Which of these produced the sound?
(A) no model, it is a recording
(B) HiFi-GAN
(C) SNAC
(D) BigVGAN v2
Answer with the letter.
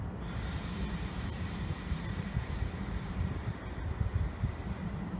D